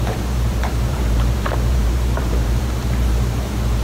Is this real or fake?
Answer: fake